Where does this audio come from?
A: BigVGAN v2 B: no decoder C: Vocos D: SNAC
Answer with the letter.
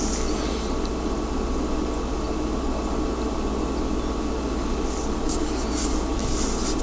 B